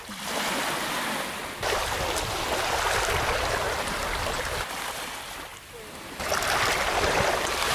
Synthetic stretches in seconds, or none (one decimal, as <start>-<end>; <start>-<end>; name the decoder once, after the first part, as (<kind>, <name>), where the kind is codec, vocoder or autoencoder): none